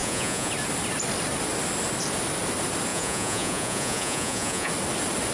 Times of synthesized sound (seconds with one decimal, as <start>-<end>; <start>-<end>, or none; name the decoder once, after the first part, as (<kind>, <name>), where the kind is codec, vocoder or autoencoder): 0.0-0.5 (vocoder, Vocos); 2.9-4.7